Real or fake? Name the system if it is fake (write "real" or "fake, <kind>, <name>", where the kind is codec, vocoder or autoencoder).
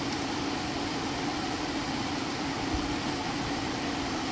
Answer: real